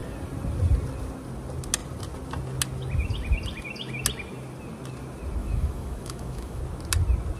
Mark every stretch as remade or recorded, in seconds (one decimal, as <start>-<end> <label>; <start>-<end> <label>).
0.0-5.4 recorded; 5.4-6.6 remade; 6.6-7.4 recorded